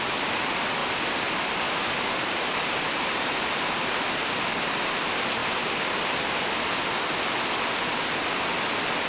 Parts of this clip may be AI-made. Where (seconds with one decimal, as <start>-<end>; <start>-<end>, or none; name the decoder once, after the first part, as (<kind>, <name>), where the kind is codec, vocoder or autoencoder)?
0.8-4.0 (vocoder, BigVGAN v2)